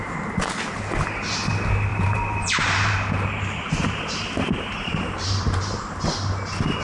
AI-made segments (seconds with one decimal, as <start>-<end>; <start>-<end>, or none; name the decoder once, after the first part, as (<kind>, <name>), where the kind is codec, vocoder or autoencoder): 1.9-6.0 (vocoder, BigVGAN v2)